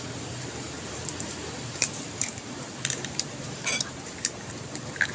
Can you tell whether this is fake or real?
fake